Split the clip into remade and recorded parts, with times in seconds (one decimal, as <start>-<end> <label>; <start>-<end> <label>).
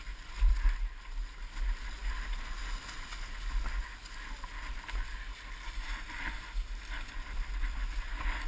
0.0-8.5 recorded